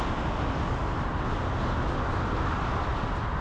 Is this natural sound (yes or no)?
yes